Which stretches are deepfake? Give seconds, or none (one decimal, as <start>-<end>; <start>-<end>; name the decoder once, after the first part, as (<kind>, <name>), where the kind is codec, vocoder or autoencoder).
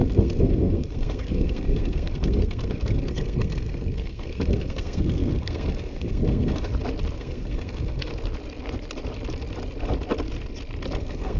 0.0-6.7 (codec, SNAC); 7.2-8.1; 11.0-11.4